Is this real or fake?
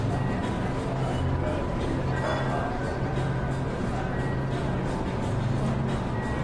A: real